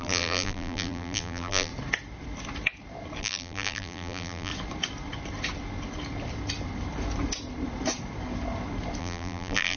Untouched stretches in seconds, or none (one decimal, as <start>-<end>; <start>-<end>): 1.7-3.2; 4.5-9.0

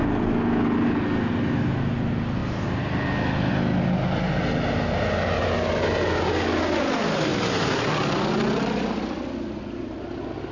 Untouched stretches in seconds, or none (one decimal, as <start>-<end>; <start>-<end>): 0.0-7.3; 7.9-10.5